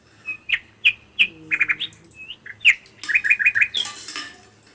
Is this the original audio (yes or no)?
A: yes